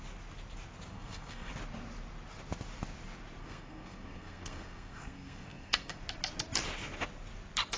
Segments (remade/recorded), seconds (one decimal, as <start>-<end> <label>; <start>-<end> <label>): 0.0-0.9 recorded; 0.9-1.5 remade; 1.5-3.4 recorded; 3.4-6.0 remade; 6.0-7.8 recorded